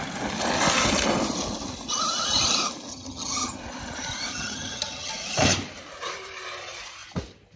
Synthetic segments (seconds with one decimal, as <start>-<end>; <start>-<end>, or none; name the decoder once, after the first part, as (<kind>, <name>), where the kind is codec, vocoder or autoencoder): 2.9-3.6 (vocoder, HiFi-GAN); 4.3-5.1